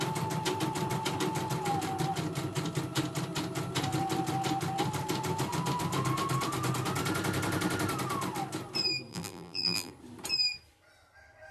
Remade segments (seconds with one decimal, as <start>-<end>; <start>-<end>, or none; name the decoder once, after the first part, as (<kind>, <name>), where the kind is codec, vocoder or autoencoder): 9.1-9.9 (vocoder, BigVGAN v2)

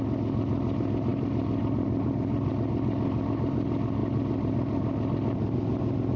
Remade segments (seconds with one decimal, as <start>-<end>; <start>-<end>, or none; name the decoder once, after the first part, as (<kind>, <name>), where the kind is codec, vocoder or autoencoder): none

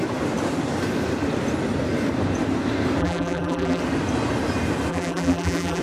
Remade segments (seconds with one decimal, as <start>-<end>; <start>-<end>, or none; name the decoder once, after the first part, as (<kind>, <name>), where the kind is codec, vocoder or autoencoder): 3.0-3.8 (vocoder, BigVGAN v2); 4.9-5.8